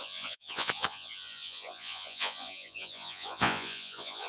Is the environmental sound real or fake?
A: fake